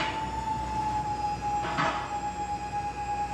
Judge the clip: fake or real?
real